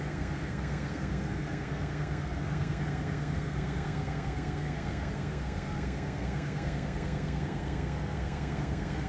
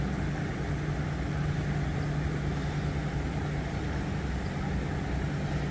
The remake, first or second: first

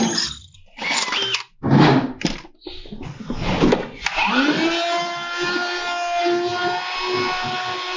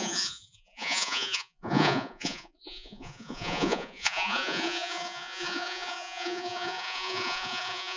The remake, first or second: second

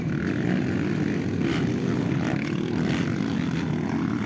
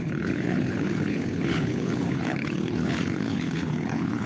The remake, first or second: second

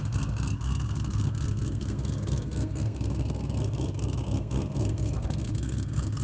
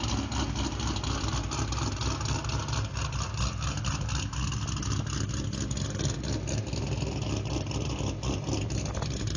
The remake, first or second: first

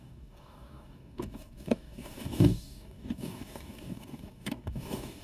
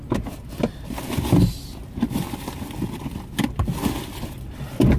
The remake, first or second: first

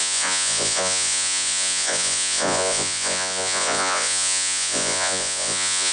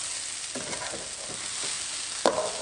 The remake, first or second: first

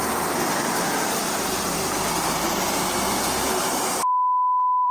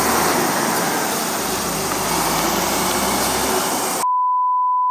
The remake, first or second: first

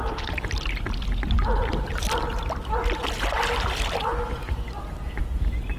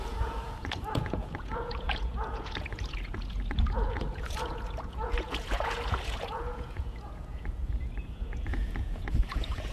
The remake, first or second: second